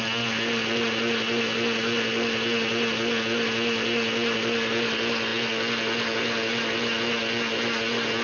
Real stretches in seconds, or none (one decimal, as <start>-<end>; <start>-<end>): 0.0-8.2